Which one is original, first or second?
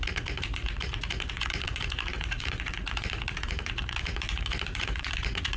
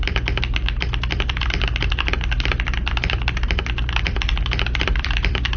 second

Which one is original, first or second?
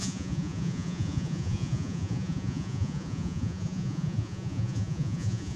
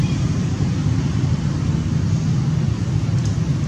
second